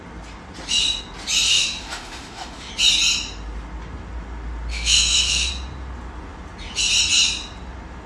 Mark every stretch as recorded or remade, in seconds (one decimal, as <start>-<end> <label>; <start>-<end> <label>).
0.0-1.5 recorded; 1.5-2.7 remade; 2.7-4.7 recorded; 4.7-5.5 remade; 5.5-8.1 recorded